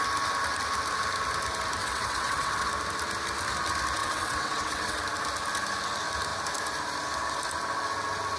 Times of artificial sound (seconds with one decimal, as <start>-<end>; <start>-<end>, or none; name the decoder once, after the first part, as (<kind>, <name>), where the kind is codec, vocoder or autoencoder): 1.8-2.7 (vocoder, WaveNeXt); 4.0-5.0